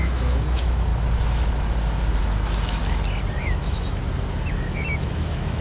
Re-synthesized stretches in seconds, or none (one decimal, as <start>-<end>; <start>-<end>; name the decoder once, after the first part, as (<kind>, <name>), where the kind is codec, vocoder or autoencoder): 0.0-0.9 (autoencoder, DAC-VAE); 2.2-2.8; 3.4-4.0; 4.5-5.6